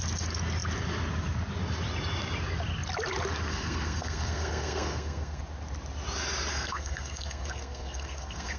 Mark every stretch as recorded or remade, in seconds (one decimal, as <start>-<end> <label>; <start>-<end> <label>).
0.0-3.5 recorded; 3.5-5.4 remade; 5.4-6.5 recorded; 6.5-8.6 remade